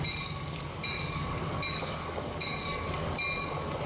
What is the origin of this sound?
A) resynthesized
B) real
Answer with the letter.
A